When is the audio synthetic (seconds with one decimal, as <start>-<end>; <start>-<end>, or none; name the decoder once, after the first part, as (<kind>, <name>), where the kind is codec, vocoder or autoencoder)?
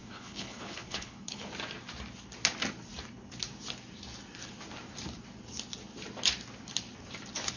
0.0-1.5 (codec, HILCodec)